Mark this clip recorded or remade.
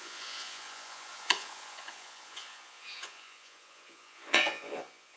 remade